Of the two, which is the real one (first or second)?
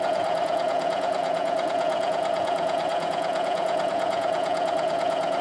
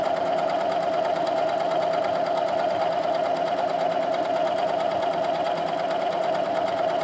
second